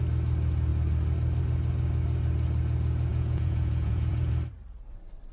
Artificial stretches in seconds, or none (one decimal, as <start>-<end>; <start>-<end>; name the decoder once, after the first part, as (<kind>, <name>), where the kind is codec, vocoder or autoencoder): 3.1-4.3 (vocoder, Vocos)